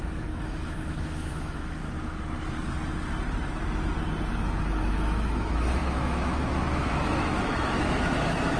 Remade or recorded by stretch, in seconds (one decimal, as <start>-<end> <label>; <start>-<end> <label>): 0.0-1.8 remade; 1.8-4.6 recorded; 4.6-8.6 remade